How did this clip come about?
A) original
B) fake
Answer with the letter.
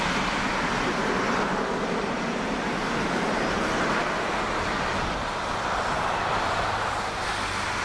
A